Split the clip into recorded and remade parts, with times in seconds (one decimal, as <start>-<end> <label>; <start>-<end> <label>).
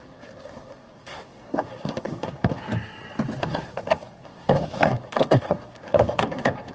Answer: 0.0-2.6 remade; 2.6-3.4 recorded; 3.4-6.7 remade